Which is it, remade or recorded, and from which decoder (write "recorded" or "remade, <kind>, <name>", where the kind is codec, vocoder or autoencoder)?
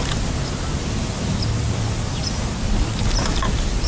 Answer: recorded